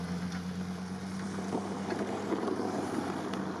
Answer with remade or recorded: recorded